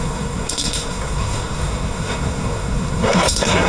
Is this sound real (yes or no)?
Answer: no